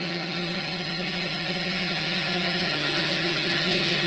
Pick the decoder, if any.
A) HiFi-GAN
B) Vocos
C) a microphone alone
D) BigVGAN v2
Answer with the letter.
A